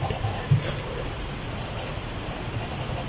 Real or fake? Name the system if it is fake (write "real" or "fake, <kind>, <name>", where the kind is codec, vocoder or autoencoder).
fake, vocoder, BigVGAN v2